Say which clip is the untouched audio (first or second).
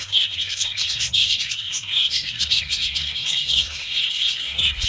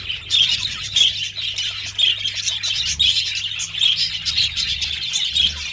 second